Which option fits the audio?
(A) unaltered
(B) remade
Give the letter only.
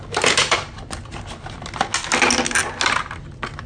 A